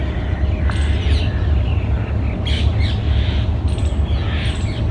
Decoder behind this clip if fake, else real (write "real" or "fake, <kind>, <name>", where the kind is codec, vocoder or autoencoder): real